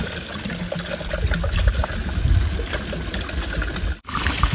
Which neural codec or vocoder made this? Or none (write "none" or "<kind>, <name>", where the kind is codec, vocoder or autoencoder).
none